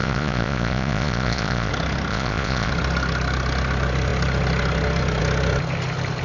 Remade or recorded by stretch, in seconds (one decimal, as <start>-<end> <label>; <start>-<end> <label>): 0.0-1.7 remade; 1.7-2.1 recorded; 2.1-2.7 remade; 2.7-6.2 recorded